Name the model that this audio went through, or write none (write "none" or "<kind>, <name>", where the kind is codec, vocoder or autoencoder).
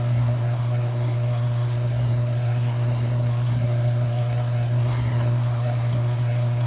codec, SNAC